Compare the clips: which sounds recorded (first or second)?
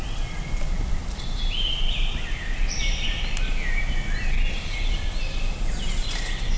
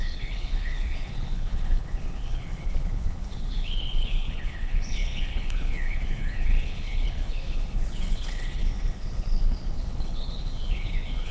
first